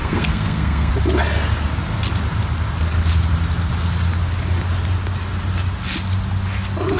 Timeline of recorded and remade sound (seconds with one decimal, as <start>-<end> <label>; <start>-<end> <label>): 0.0-0.9 remade; 0.9-7.0 recorded